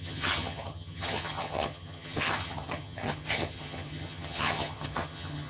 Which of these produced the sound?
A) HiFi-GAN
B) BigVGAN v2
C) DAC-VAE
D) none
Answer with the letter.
A